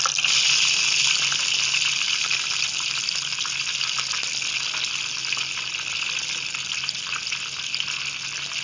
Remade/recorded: recorded